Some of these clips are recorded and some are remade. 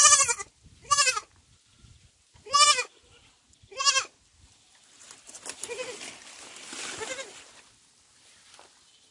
recorded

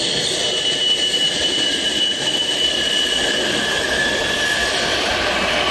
remade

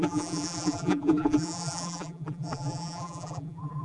remade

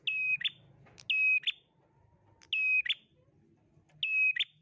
recorded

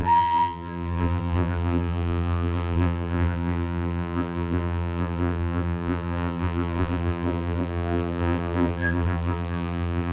remade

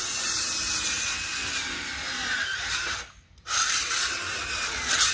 remade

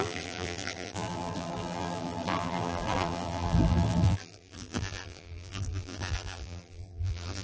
remade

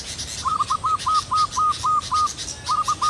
recorded